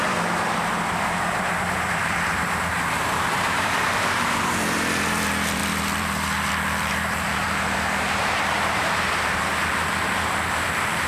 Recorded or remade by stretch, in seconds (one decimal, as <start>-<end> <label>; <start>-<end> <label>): 0.0-5.6 remade; 5.6-6.9 recorded; 6.9-9.5 remade; 9.5-10.5 recorded; 10.5-11.1 remade

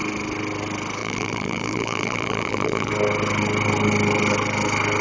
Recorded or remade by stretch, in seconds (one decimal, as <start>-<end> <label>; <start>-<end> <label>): 0.0-1.0 recorded; 1.0-2.9 remade; 2.9-5.0 recorded

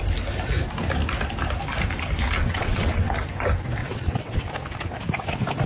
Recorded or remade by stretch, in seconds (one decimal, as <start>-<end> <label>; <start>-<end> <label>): 0.0-2.4 recorded; 2.4-3.1 remade; 3.1-3.8 recorded; 3.8-4.4 remade; 4.4-5.7 recorded

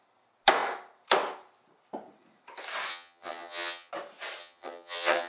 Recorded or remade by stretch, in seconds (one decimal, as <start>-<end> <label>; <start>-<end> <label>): 0.0-2.9 recorded; 2.9-3.9 remade; 3.9-4.4 recorded; 4.4-5.3 remade